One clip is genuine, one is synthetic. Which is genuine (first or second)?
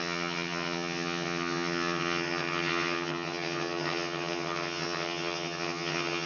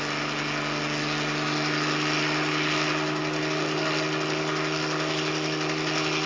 second